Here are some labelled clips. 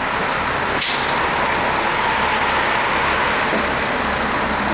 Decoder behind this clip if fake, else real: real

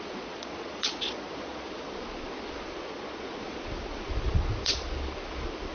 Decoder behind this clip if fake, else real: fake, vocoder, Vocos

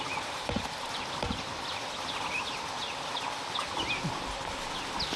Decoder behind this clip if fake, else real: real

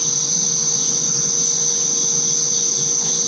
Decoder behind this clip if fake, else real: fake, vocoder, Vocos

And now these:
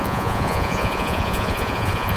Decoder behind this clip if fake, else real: fake, vocoder, Vocos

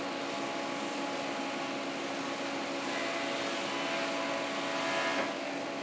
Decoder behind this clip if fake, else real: real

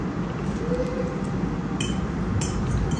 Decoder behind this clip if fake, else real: real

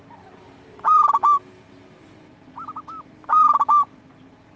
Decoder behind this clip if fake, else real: real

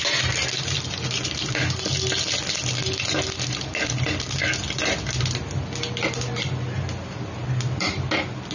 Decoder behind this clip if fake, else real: real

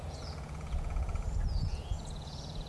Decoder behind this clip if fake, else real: fake, vocoder, Vocos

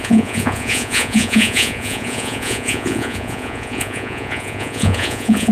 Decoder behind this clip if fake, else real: fake, vocoder, Vocos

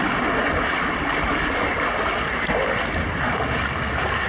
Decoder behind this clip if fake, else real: real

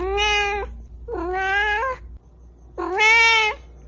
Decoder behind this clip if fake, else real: real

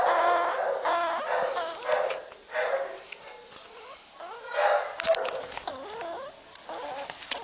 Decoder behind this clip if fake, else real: real